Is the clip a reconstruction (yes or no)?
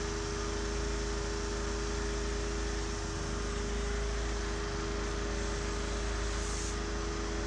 no